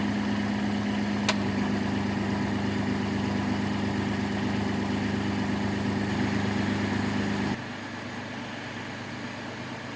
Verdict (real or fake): real